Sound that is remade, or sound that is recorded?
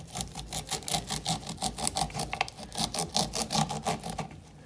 recorded